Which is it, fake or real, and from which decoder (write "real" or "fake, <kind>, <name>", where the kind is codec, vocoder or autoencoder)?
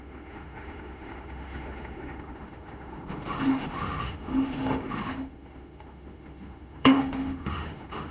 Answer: fake, autoencoder, DAC-VAE